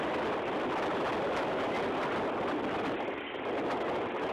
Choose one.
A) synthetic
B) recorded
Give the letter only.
B